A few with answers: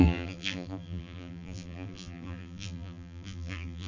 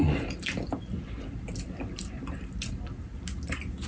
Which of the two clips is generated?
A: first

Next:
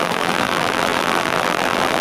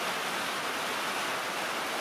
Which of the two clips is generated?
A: first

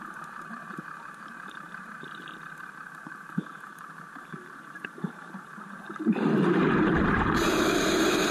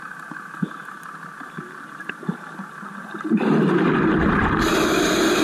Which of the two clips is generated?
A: first